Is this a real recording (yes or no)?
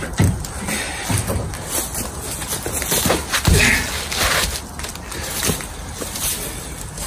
yes